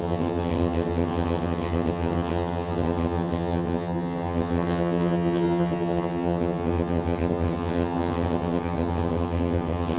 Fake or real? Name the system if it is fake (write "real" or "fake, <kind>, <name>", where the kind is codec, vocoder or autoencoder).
fake, vocoder, HiFi-GAN